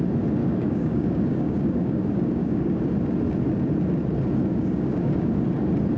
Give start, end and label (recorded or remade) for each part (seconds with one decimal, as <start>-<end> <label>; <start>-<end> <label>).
0.0-0.4 recorded; 0.4-2.8 remade; 2.8-4.5 recorded; 4.5-5.3 remade; 5.3-6.0 recorded